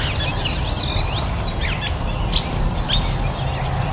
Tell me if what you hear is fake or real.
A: real